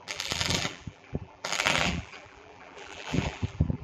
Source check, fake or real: fake